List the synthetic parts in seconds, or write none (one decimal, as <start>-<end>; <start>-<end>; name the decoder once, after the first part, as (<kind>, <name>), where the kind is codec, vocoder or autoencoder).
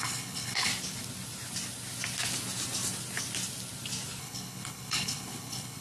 0.0-0.7 (codec, HILCodec); 4.2-5.8